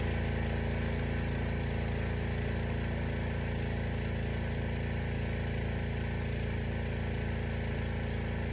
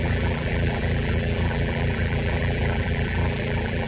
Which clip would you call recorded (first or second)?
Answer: first